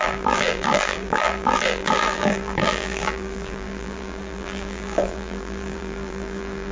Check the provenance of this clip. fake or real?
fake